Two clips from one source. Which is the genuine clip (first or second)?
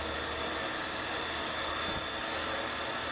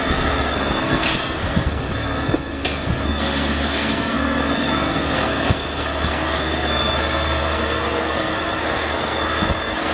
first